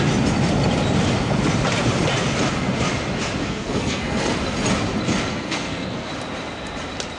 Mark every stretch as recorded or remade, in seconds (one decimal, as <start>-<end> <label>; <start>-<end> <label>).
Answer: 0.0-3.4 recorded; 3.4-4.3 remade; 4.3-5.3 recorded; 5.3-6.1 remade; 6.1-7.2 recorded